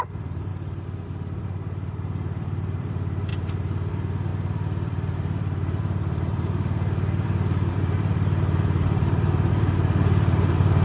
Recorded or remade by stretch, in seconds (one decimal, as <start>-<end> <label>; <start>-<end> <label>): 0.0-0.5 remade; 0.5-1.4 recorded; 1.4-10.8 remade